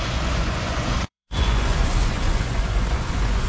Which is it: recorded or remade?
remade